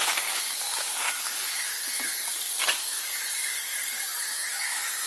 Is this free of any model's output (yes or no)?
no